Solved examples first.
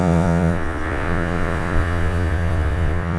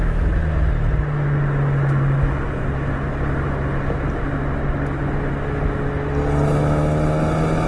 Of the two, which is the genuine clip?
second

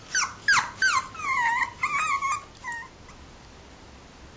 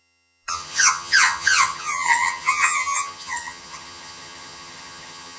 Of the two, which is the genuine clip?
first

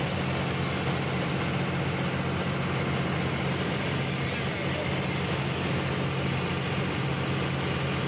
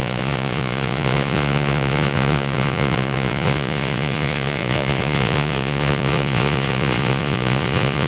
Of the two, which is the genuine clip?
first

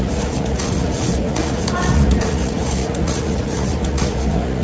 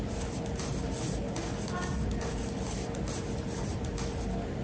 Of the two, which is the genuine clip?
second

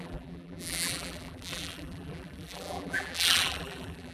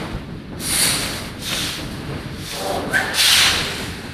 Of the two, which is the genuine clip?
second